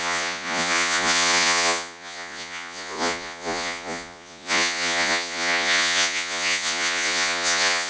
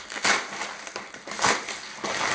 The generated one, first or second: first